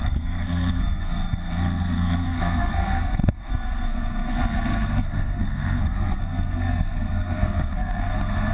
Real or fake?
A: fake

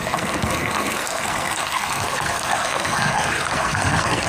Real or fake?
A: fake